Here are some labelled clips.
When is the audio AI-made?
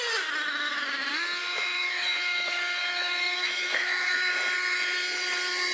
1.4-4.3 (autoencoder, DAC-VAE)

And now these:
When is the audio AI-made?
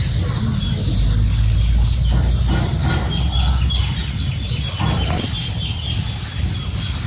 none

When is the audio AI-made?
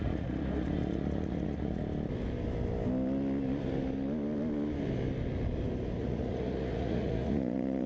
0.0-1.8 (vocoder, Vocos); 6.0-7.9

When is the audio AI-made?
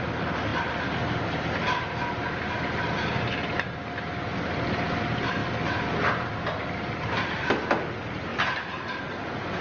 none